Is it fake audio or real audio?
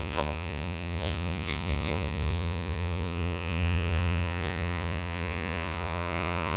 fake